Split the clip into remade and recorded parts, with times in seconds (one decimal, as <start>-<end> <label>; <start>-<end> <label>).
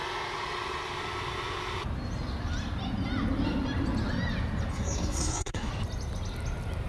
0.0-4.7 recorded; 4.7-5.7 remade; 5.7-6.9 recorded